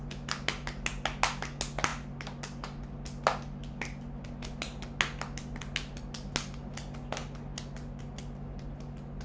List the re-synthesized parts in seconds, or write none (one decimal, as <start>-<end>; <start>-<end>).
none